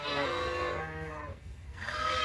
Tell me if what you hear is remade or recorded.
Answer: remade